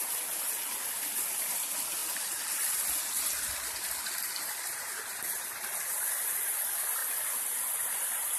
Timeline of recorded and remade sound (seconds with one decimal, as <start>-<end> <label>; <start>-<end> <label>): 0.0-8.4 recorded